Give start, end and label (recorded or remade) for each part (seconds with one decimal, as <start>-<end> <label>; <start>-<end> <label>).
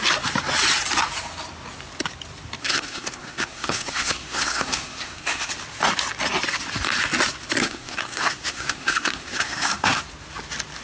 0.0-2.6 recorded; 2.6-5.5 remade; 5.5-7.6 recorded; 7.6-10.0 remade; 10.0-10.8 recorded